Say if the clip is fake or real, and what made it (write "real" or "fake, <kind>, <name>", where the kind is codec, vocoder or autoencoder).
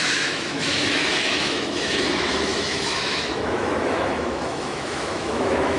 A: fake, autoencoder, DAC-VAE